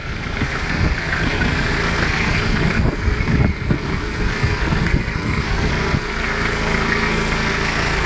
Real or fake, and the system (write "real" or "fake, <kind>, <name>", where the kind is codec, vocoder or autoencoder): fake, codec, SNAC